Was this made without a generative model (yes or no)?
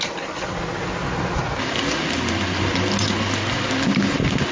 yes